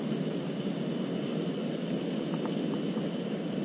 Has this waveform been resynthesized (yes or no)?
no